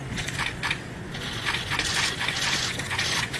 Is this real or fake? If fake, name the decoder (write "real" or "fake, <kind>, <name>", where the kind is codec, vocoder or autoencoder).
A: fake, vocoder, Vocos